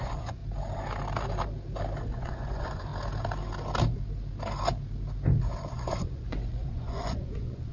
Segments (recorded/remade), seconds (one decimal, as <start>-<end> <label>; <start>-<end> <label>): 0.0-0.4 remade; 0.4-2.0 recorded; 2.0-2.9 remade; 2.9-5.7 recorded; 5.7-7.7 remade